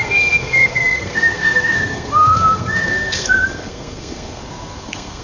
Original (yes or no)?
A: no